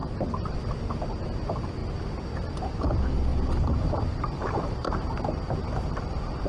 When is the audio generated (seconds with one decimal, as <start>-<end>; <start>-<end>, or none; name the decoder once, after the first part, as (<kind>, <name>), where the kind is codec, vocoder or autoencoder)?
3.3-5.0 (vocoder, BigVGAN v2)